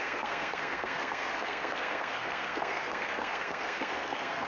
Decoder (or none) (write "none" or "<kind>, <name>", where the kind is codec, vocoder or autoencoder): codec, SNAC